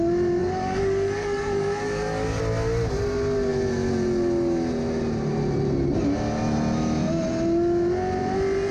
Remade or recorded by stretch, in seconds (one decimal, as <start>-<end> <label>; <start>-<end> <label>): 0.0-0.4 recorded; 0.4-2.4 remade; 2.4-8.7 recorded